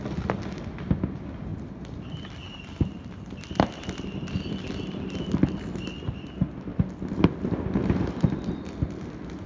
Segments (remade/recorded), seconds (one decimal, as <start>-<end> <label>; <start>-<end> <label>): 0.0-1.5 recorded; 1.5-5.7 remade; 5.7-6.7 recorded; 6.7-8.5 remade; 8.5-9.5 recorded